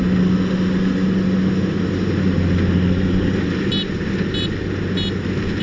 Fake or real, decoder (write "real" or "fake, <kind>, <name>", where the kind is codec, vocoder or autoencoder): real